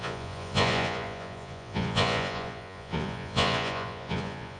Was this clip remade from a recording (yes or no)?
yes